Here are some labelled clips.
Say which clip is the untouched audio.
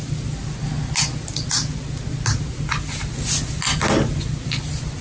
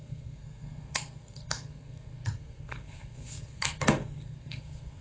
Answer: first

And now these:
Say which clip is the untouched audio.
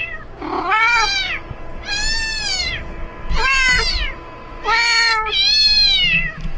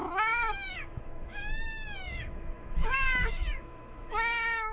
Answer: first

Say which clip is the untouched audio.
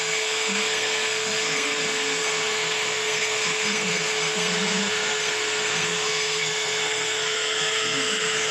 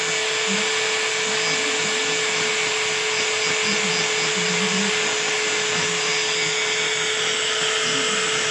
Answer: second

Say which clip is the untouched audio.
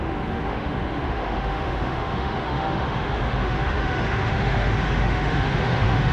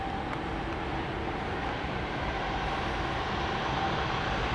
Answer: second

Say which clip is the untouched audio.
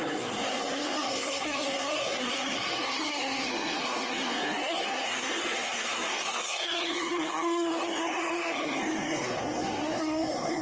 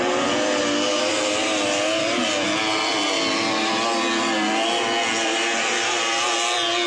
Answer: second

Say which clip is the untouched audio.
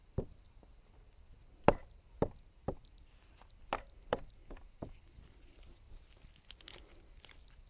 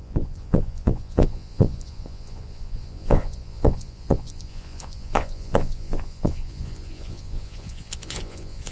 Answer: first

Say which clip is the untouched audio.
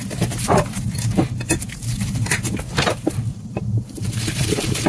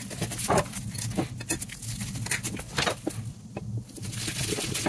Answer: second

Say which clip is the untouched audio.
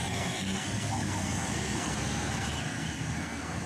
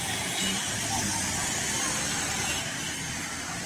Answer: second